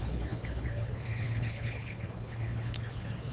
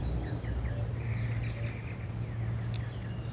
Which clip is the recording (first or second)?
second